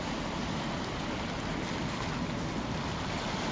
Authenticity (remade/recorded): recorded